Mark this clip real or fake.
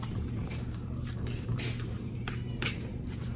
fake